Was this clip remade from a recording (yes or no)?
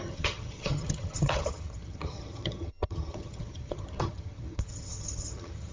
yes